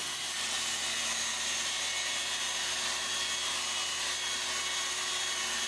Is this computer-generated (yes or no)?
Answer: no